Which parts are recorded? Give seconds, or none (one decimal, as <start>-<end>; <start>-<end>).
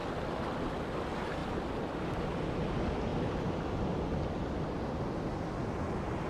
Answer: 0.0-6.3